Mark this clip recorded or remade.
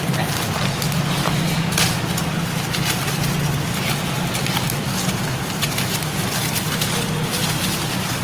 recorded